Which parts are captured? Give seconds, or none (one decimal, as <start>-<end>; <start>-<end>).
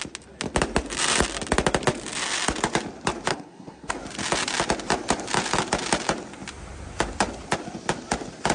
0.0-3.3; 3.9-8.5